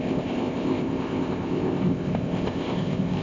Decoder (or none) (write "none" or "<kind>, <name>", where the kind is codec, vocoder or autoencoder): codec, ZipCodec